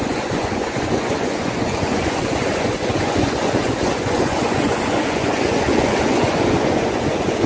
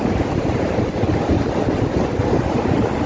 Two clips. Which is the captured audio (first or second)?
second